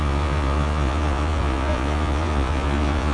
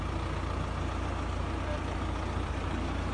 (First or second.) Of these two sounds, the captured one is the second